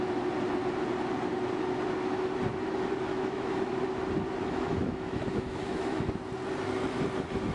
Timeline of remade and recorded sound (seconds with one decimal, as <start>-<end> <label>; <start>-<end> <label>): 0.0-3.1 recorded; 3.1-3.7 remade; 3.7-4.4 recorded; 4.4-6.2 remade; 6.2-7.5 recorded